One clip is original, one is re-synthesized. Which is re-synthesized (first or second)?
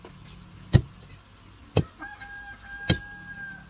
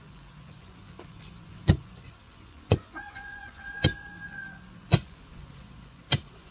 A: second